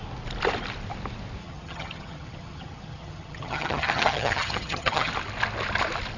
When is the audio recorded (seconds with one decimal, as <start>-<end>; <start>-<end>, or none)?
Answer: 0.0-1.4; 5.1-6.2